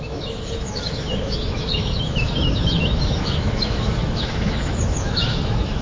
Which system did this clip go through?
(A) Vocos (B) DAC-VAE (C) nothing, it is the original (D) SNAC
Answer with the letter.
B